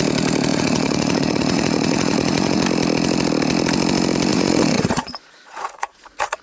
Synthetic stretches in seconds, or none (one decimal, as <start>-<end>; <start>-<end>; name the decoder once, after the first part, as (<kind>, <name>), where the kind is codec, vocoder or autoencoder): 0.5-2.6 (vocoder, Vocos); 4.3-6.4